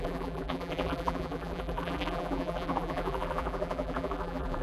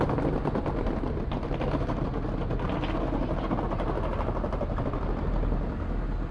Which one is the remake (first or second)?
first